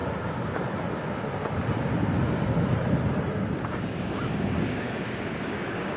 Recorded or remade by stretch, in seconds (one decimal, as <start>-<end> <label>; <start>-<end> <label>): 0.0-3.6 recorded; 3.6-6.0 remade